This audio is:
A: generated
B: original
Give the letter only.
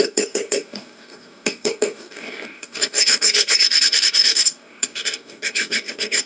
A